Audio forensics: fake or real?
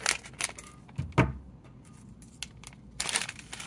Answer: real